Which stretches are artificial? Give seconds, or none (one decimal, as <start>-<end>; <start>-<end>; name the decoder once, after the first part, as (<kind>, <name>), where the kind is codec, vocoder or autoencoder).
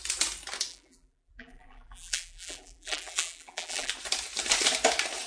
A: 0.7-3.9 (vocoder, BigVGAN v2)